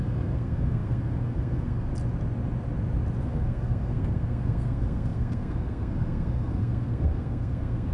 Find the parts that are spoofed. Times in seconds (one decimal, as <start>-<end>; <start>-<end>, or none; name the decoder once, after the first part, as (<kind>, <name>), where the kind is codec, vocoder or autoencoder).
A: 0.0-1.9 (codec, SNAC); 3.2-7.9